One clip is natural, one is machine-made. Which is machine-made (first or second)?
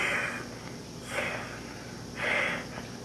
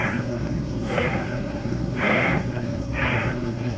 second